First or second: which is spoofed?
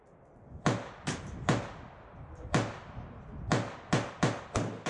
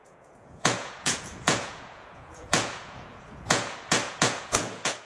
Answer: second